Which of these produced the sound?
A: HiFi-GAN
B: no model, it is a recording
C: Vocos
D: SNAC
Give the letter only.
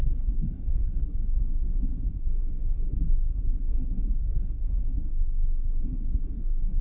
D